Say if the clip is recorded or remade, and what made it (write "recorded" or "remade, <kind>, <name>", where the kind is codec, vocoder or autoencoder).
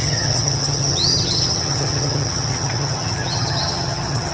remade, vocoder, HiFi-GAN